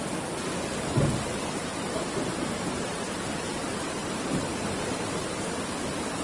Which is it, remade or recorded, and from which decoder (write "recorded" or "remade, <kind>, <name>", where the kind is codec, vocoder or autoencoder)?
recorded